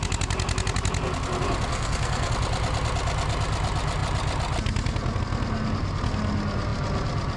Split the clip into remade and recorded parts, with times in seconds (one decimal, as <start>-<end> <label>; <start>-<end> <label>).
0.0-1.7 recorded; 1.7-2.3 remade; 2.3-7.4 recorded

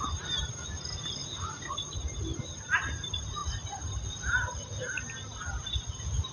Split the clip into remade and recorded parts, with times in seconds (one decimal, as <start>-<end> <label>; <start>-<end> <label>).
0.0-6.3 recorded